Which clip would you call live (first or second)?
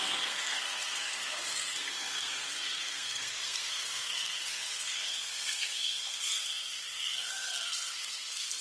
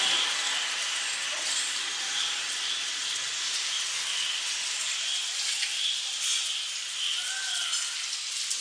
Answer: second